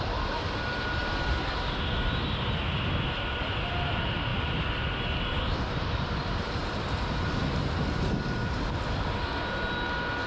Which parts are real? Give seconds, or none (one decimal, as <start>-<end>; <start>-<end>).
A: 0.0-10.3